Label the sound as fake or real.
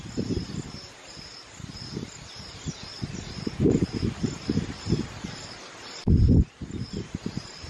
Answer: real